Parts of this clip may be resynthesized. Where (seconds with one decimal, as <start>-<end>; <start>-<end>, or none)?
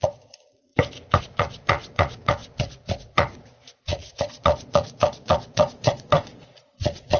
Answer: 0.0-0.7; 1.2-7.2